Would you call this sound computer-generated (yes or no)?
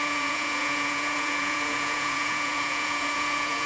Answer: yes